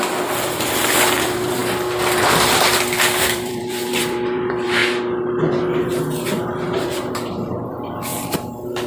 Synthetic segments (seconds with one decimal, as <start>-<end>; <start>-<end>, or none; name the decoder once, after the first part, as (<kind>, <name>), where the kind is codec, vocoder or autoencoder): 0.0-1.6 (vocoder, BigVGAN v2); 3.2-4.8; 6.0-8.1